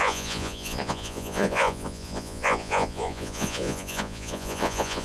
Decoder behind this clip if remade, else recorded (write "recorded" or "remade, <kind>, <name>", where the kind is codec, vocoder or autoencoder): remade, vocoder, Vocos